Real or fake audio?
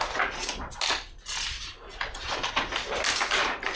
real